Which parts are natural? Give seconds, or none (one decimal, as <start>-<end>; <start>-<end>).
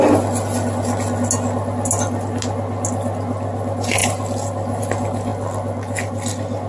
0.0-6.7